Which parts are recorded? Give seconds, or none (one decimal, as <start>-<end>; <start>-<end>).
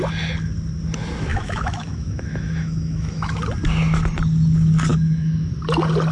0.0-1.3; 3.4-4.9; 5.5-6.1